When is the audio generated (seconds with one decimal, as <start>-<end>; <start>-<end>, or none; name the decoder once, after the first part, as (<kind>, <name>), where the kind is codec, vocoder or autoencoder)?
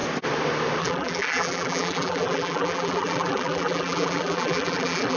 0.8-5.2 (vocoder, BigVGAN v2)